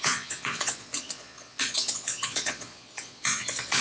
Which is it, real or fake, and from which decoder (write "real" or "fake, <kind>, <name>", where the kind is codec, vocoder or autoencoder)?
fake, vocoder, Vocos